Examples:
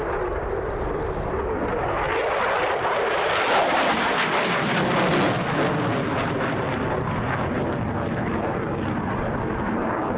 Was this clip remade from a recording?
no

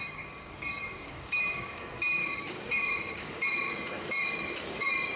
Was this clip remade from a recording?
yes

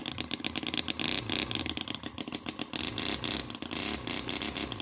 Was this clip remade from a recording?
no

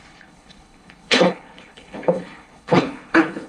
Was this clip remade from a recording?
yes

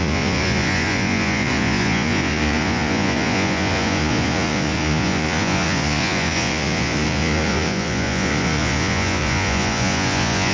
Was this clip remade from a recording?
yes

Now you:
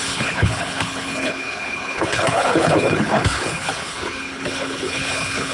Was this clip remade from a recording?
yes